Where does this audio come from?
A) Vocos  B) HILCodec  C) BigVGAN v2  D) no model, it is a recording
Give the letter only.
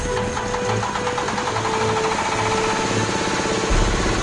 D